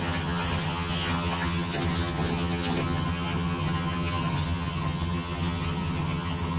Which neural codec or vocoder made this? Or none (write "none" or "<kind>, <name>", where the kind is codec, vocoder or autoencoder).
vocoder, HiFi-GAN